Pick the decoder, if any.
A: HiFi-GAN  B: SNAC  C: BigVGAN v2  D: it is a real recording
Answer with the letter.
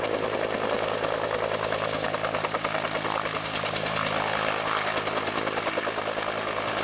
D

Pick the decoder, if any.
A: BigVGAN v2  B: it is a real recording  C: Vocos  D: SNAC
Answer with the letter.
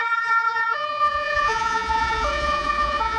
C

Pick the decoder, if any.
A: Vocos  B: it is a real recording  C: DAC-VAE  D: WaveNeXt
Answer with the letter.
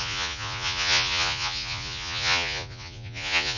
A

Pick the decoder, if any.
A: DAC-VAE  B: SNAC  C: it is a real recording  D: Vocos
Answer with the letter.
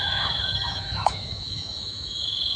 A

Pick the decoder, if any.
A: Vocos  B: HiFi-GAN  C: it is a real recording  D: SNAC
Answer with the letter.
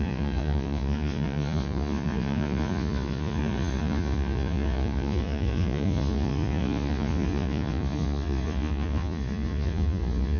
A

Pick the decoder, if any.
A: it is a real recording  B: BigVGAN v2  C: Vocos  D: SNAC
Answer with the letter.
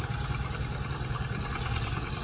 B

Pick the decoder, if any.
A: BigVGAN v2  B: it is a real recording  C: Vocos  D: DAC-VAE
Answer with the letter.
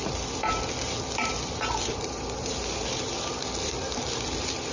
A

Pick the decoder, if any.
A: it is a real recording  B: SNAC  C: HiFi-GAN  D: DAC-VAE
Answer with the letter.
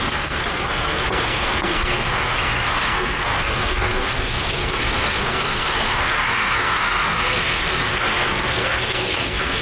B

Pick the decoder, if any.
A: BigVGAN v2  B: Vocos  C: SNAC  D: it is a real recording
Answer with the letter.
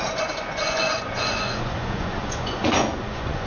B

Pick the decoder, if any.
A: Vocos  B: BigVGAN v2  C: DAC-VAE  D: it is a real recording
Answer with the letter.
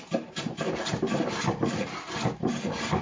B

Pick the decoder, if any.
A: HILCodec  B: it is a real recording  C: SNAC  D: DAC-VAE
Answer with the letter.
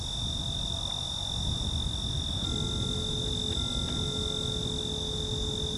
B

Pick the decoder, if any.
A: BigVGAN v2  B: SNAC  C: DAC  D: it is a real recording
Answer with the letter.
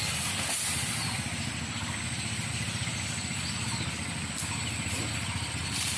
D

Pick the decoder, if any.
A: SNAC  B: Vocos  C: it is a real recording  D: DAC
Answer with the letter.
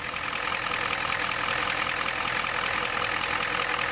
C